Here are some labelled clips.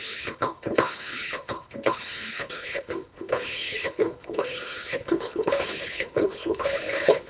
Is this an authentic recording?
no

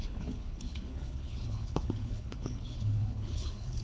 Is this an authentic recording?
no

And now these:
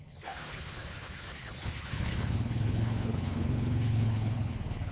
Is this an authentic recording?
no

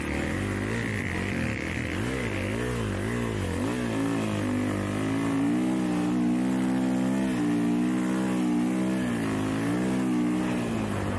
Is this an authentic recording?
yes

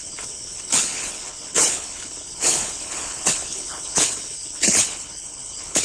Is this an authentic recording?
no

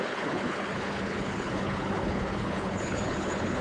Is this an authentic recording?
no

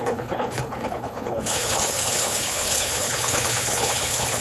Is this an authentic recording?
no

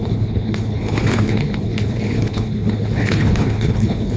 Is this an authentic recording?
no